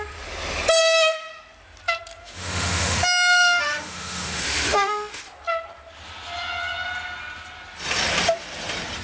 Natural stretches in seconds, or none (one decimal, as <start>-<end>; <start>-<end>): 0.0-0.8; 1.3-2.2; 5.2-9.0

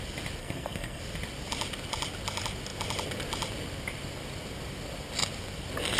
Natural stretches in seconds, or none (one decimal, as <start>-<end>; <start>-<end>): 0.0-0.4; 1.0-6.0

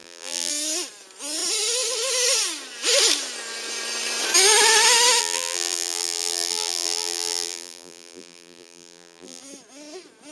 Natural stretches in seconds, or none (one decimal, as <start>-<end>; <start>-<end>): 0.5-5.2; 9.4-10.3

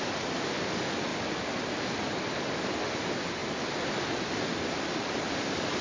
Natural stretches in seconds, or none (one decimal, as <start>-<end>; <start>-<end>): 1.1-1.7; 3.4-5.8

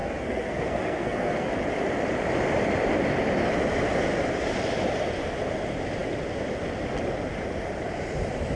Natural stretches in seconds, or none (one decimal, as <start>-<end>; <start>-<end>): 1.5-8.6

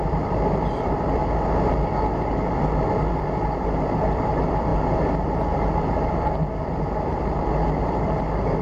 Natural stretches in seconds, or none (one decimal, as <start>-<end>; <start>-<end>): 1.2-3.2

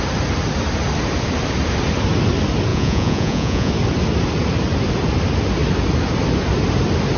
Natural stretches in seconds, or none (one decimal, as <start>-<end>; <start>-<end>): 0.0-2.7; 3.7-7.2